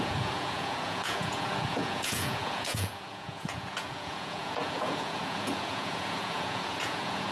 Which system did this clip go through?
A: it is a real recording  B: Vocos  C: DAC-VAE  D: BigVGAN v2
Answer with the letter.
B